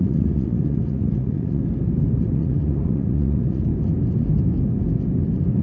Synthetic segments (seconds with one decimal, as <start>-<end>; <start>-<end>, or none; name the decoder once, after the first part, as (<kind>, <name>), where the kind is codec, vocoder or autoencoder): 0.0-1.6 (vocoder, Vocos); 2.2-3.7